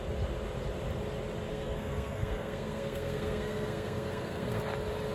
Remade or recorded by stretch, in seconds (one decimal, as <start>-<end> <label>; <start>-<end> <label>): 0.0-1.5 recorded; 1.5-4.6 remade; 4.6-5.1 recorded